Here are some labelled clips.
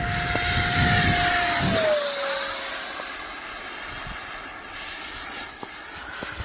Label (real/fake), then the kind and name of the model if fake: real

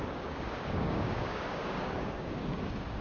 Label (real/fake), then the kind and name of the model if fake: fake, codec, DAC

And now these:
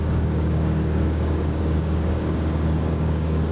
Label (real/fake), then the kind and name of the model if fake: fake, codec, DAC